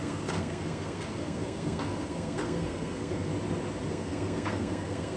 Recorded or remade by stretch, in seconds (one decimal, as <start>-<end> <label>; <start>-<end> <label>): 0.0-3.3 remade; 3.3-3.9 recorded; 3.9-5.2 remade